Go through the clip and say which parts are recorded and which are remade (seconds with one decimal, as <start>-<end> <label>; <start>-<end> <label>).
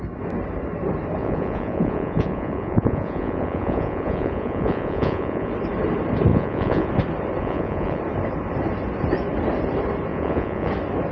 0.0-1.2 recorded; 1.2-5.5 remade; 5.5-6.3 recorded; 6.3-6.9 remade; 6.9-7.4 recorded; 7.4-8.0 remade; 8.0-10.1 recorded; 10.1-10.7 remade; 10.7-11.1 recorded